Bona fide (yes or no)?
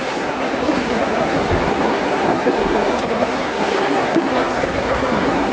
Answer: no